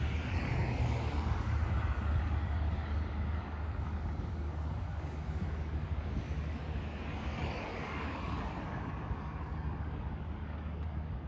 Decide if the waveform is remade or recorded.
remade